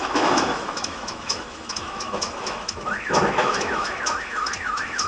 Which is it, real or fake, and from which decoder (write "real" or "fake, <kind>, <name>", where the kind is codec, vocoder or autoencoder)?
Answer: fake, autoencoder, DAC-VAE